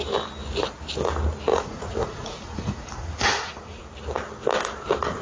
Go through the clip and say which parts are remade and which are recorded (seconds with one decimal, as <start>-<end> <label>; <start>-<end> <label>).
0.0-1.5 recorded; 1.5-3.8 remade; 3.8-5.2 recorded